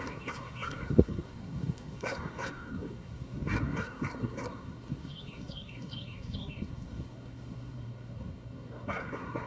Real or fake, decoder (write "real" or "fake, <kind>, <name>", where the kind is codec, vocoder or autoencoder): fake, codec, SNAC